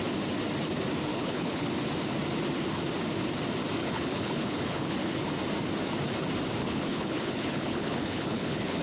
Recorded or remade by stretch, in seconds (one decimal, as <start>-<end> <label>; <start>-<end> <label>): 0.0-1.1 recorded; 1.1-1.7 remade; 1.7-3.8 recorded; 3.8-5.2 remade; 5.2-6.6 recorded; 6.6-8.8 remade